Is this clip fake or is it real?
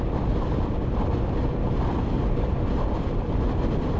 real